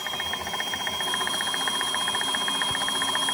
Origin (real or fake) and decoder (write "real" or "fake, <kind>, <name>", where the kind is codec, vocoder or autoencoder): real